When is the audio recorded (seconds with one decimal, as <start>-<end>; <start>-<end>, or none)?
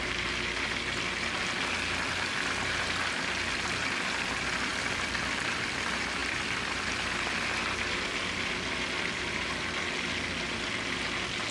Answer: 0.0-11.5